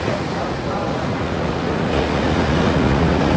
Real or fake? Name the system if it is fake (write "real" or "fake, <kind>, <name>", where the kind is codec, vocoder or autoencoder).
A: fake, vocoder, Vocos